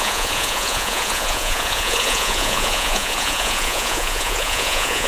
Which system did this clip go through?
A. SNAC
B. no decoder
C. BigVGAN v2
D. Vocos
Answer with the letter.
D